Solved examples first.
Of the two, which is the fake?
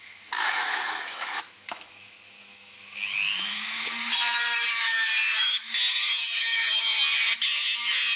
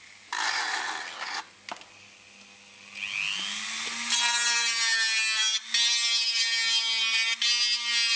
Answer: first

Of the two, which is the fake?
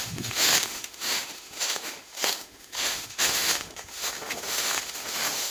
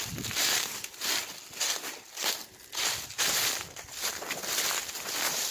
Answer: first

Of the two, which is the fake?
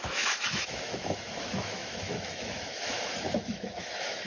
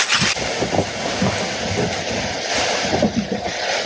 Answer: first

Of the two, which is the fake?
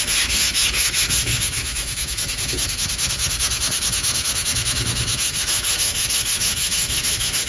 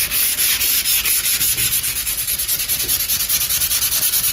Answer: first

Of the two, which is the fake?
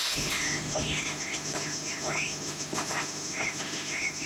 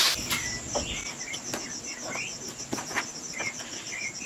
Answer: first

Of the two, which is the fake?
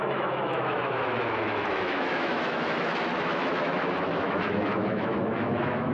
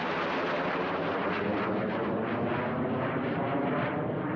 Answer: first